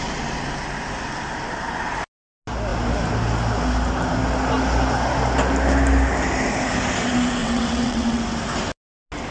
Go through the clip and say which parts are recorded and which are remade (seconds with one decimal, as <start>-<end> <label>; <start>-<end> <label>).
0.0-7.4 recorded; 7.4-8.2 remade; 8.2-9.3 recorded